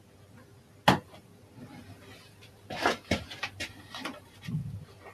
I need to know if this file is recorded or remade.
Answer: remade